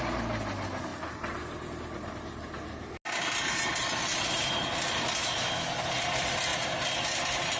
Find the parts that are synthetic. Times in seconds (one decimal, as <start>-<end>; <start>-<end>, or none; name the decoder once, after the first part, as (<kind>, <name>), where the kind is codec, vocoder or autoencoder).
5.2-5.7 (autoencoder, DAC-VAE)

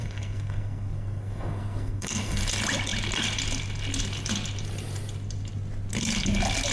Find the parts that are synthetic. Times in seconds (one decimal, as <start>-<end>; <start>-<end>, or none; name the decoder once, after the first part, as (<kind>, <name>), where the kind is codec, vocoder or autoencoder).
0.0-2.4 (codec, SNAC)

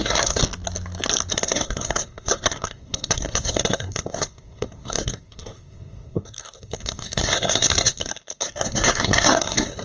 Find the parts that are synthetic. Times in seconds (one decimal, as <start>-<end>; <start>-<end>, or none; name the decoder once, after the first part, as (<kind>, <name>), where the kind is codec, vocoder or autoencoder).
0.0-0.4 (codec, SNAC); 1.3-9.8